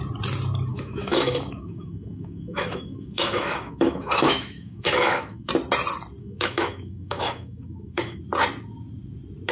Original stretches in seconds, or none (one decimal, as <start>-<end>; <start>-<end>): 0.0-0.7; 5.5-6.2; 8.2-9.5